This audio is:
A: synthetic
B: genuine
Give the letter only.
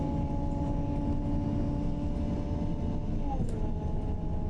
B